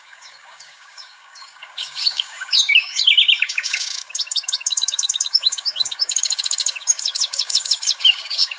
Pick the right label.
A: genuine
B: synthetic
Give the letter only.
B